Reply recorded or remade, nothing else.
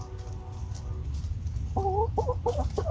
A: recorded